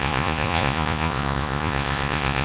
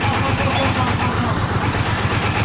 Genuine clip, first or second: second